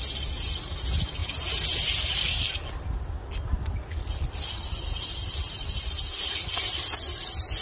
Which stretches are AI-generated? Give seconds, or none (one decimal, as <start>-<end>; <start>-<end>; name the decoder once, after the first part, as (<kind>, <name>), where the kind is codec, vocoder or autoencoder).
none